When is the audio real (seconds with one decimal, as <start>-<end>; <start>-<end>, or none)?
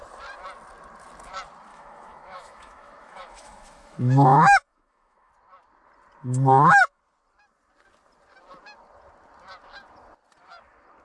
0.0-1.7; 5.3-6.2; 7.0-11.0